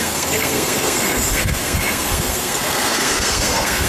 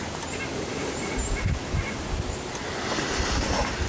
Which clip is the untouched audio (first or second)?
second